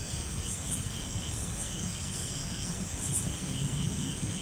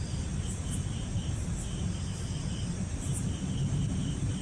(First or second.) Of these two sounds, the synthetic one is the first